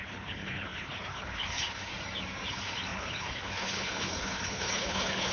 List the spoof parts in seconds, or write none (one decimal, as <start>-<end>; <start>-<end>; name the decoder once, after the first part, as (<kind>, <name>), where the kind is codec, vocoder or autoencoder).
0.0-1.9 (codec, HILCodec); 2.5-5.3